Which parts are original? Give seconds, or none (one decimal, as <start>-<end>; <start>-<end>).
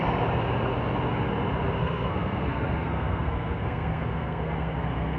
0.0-1.8